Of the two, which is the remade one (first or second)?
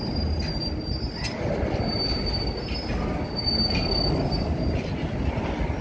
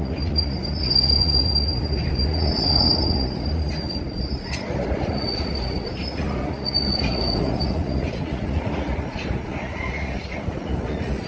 second